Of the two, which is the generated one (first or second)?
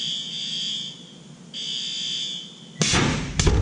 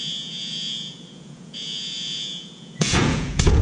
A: second